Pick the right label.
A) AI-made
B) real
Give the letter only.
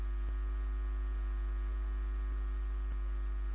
B